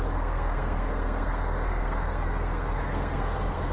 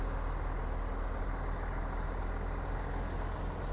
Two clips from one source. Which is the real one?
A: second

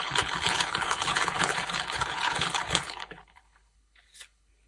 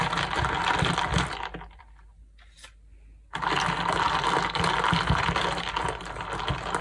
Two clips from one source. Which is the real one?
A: second